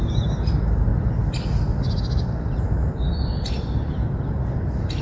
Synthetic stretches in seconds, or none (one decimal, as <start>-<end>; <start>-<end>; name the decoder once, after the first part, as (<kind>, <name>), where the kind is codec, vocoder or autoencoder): none